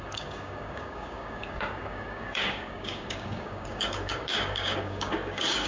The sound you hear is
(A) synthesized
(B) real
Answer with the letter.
A